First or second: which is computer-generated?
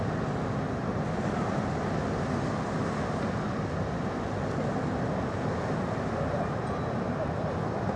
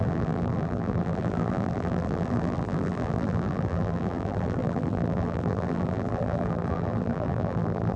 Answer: second